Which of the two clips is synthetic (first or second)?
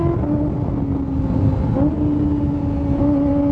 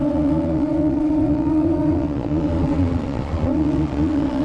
second